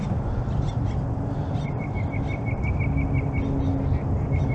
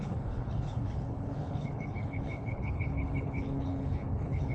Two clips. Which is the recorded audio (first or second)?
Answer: first